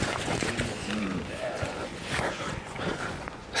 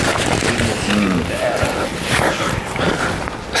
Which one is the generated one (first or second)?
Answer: first